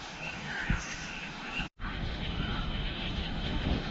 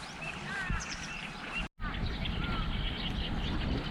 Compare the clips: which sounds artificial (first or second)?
first